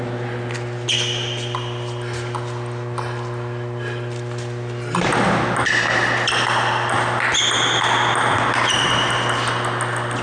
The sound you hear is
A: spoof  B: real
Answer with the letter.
B